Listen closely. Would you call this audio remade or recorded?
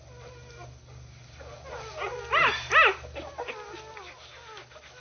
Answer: recorded